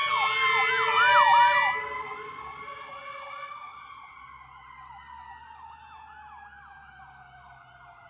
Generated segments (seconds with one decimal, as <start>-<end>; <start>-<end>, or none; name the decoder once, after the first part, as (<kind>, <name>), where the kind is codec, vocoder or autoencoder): none